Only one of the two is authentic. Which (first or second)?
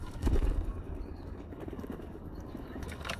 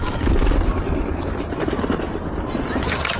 second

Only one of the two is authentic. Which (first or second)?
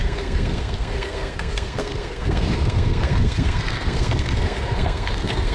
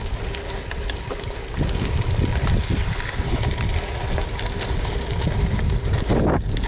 second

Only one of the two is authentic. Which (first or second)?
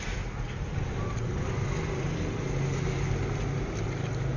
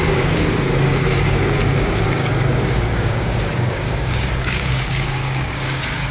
first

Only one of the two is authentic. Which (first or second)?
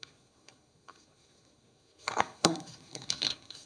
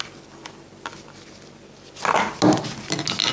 second